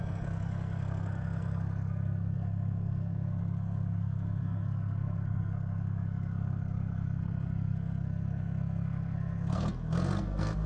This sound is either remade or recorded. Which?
remade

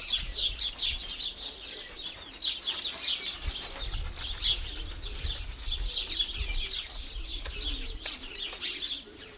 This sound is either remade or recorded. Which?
recorded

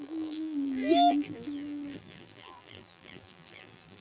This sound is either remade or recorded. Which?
remade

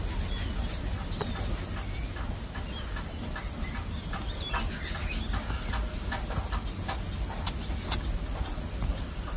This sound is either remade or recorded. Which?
recorded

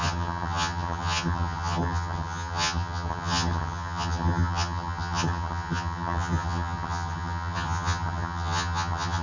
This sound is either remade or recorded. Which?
remade